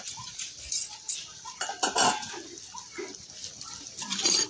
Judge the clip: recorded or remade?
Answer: recorded